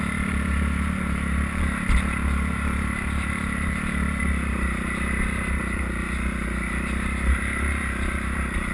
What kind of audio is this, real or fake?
fake